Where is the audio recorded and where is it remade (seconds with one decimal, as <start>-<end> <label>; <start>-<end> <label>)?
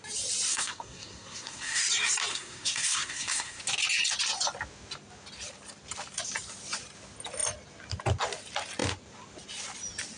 0.0-0.5 recorded; 0.5-1.8 remade; 1.8-2.3 recorded; 2.3-3.6 remade; 3.6-10.2 recorded